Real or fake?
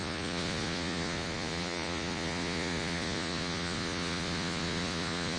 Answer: fake